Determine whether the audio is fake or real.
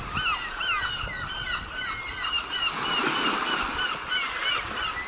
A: real